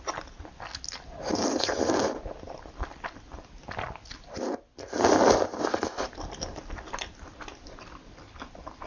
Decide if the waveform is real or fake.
real